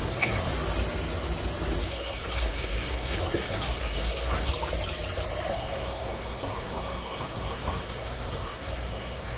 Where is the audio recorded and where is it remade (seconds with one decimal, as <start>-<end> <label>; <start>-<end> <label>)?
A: 0.0-0.5 remade; 0.5-1.9 recorded; 1.9-4.5 remade; 4.5-5.5 recorded; 5.5-9.4 remade